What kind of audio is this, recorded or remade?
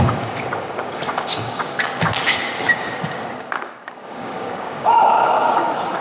remade